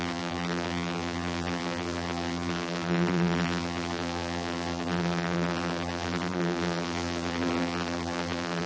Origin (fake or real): fake